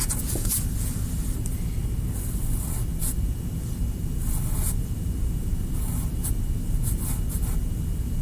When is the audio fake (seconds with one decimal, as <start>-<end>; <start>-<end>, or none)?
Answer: 0.0-0.5